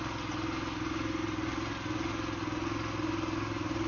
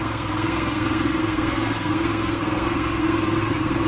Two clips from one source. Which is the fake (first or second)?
second